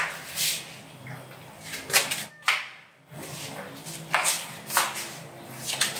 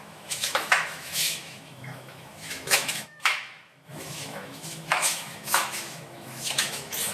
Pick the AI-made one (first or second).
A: second